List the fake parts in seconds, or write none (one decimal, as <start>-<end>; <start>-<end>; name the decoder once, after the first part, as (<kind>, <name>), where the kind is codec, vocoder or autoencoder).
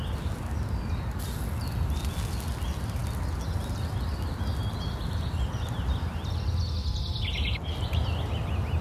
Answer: none